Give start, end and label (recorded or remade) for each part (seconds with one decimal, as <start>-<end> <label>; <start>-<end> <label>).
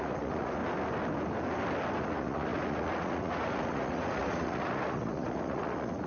0.0-0.6 remade; 0.6-2.0 recorded; 2.0-6.1 remade